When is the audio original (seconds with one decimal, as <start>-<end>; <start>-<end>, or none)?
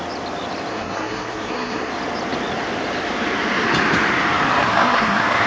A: 0.0-0.7; 1.9-4.7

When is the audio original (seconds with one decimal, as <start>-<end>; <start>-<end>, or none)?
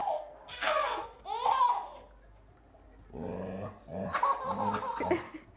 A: 1.2-5.6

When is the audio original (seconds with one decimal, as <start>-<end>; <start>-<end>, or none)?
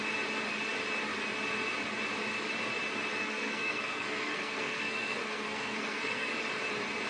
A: 0.0-3.2; 6.3-7.1